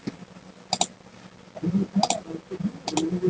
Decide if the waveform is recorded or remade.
recorded